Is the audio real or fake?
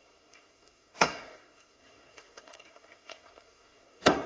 fake